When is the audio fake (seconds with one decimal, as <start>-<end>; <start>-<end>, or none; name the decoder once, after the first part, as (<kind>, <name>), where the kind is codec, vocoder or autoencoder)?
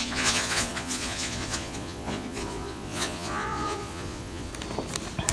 0.0-4.5 (vocoder, Vocos)